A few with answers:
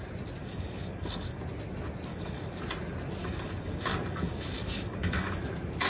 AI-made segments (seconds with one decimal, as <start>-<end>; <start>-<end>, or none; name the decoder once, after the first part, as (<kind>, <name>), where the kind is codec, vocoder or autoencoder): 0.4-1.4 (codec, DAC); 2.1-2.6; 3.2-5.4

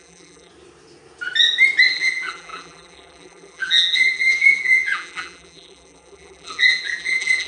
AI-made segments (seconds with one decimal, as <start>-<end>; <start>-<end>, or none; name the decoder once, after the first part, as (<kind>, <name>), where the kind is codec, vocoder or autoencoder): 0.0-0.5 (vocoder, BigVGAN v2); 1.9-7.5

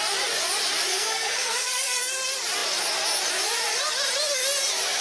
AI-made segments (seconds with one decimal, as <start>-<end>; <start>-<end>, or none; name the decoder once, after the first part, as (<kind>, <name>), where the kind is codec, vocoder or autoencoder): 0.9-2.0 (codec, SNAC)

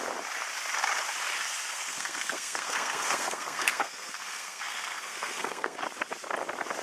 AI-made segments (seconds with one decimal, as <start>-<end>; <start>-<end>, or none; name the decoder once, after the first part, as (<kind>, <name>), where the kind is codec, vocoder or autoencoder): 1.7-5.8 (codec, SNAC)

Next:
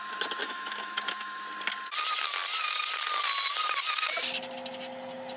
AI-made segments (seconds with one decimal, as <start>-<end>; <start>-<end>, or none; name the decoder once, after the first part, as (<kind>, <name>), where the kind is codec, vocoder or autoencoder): 0.4-1.4 (autoencoder, DAC-VAE)